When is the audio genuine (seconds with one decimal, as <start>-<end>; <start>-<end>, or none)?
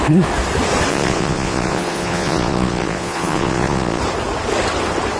0.0-0.9; 4.0-5.2